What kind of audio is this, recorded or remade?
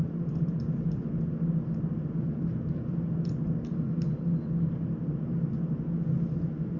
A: recorded